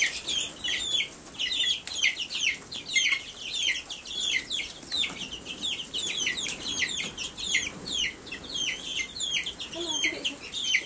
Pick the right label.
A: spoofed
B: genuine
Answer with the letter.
B